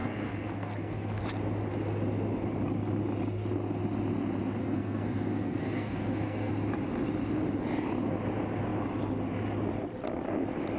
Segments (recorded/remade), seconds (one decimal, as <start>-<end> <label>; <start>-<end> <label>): 0.0-1.2 remade; 1.2-4.6 recorded; 4.6-6.5 remade; 6.5-10.8 recorded

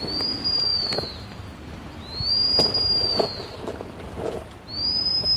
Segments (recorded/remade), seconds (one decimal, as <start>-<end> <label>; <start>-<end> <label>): 0.0-0.7 recorded; 0.7-2.3 remade; 2.3-5.4 recorded

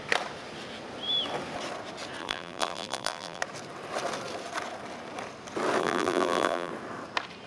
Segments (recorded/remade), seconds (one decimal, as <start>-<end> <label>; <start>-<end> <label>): 0.0-2.2 recorded; 2.2-3.4 remade; 3.4-5.8 recorded; 5.8-6.7 remade; 6.7-7.5 recorded

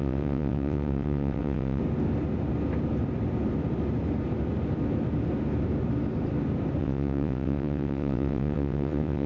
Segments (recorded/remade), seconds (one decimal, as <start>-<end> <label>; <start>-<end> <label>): 0.0-1.8 remade; 1.8-6.8 recorded; 6.8-9.3 remade